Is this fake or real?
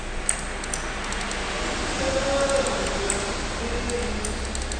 real